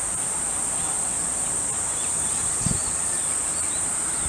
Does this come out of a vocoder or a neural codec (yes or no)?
no